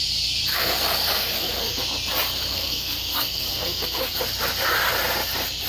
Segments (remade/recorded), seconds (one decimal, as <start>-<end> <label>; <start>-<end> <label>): 0.0-0.5 recorded; 0.5-1.8 remade; 1.8-2.5 recorded; 2.5-4.2 remade; 4.2-5.7 recorded